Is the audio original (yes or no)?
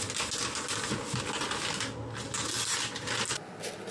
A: yes